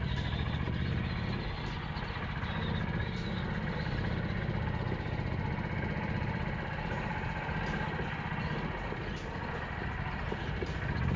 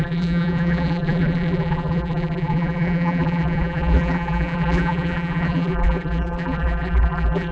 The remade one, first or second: second